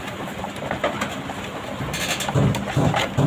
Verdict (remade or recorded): recorded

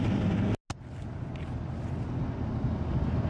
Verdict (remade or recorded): recorded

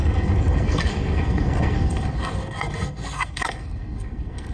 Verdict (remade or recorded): remade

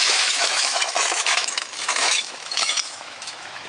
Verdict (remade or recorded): remade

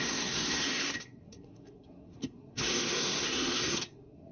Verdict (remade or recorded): remade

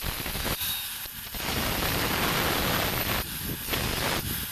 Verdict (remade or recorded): recorded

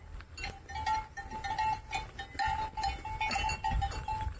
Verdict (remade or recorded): recorded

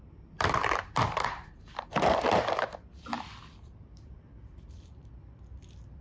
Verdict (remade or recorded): remade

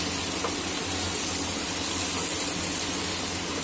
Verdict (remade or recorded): recorded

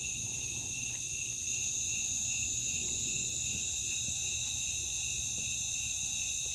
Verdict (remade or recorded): remade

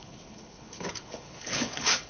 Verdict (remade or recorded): remade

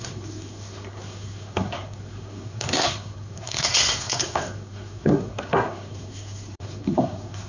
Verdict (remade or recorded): remade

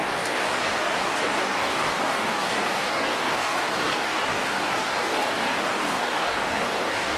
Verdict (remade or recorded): remade